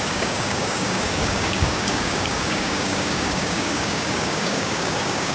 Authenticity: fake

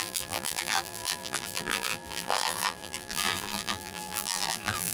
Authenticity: fake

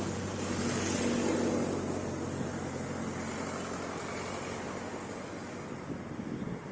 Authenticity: real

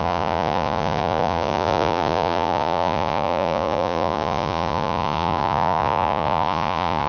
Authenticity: fake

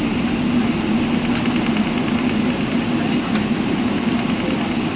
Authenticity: real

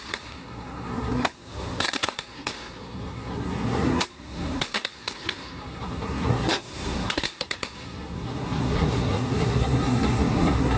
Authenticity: fake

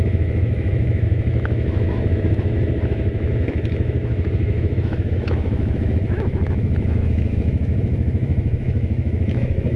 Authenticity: fake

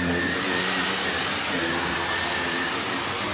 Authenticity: real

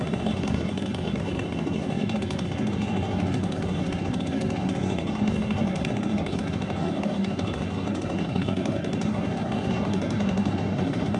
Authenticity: fake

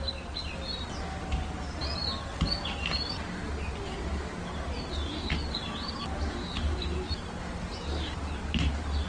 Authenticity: real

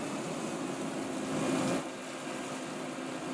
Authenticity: real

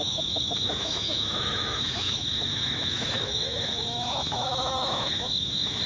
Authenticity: fake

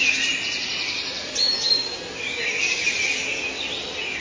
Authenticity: real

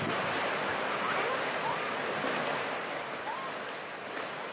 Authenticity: real